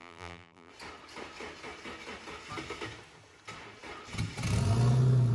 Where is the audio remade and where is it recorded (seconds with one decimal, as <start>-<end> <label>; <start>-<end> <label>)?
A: 0.0-0.7 remade; 0.7-5.3 recorded